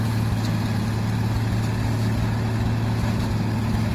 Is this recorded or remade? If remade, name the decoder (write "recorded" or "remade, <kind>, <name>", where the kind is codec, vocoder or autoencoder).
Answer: recorded